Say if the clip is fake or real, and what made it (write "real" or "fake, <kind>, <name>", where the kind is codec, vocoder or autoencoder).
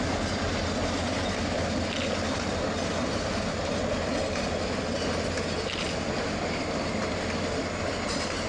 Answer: real